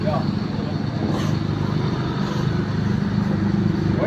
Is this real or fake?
real